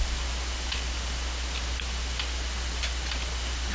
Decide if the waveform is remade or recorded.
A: recorded